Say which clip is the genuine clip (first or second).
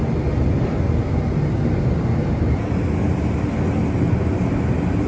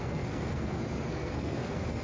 first